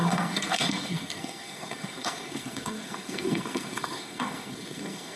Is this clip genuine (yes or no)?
no